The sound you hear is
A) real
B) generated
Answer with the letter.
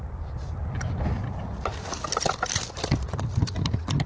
A